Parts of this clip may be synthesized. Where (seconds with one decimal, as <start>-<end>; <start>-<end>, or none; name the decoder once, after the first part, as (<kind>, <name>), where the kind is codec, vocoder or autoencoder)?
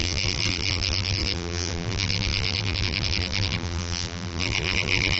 0.0-5.2 (vocoder, BigVGAN v2)